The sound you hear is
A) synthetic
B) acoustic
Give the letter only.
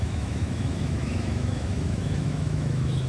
A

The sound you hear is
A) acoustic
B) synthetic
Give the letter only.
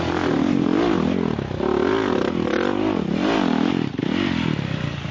A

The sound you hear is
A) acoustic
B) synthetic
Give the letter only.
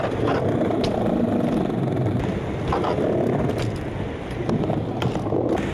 A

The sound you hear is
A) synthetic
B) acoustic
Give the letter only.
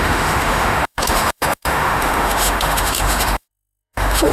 A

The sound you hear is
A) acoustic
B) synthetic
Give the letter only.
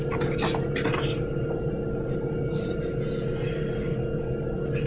A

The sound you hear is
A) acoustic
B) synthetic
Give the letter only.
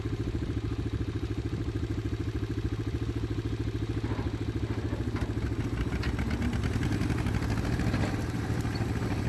A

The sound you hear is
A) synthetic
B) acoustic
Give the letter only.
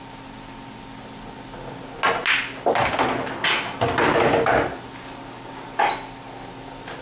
B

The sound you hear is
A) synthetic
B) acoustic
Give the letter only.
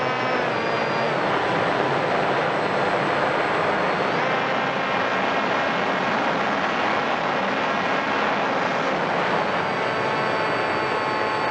B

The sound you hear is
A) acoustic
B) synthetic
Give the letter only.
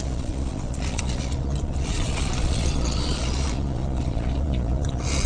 B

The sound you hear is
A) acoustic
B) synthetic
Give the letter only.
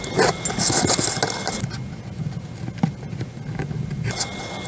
A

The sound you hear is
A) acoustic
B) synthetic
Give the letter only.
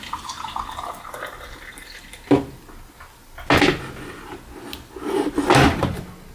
A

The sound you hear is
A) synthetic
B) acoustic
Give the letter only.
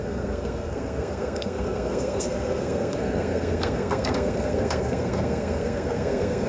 A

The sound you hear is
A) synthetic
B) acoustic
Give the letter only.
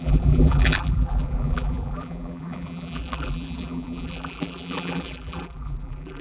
A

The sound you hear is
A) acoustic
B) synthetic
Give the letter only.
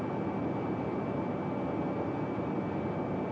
A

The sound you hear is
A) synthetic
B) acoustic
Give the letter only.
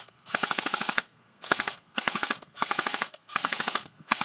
A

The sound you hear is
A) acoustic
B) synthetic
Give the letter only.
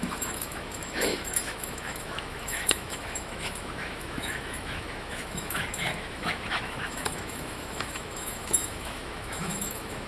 B